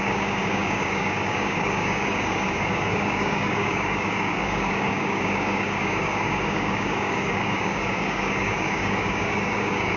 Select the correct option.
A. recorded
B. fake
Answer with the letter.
B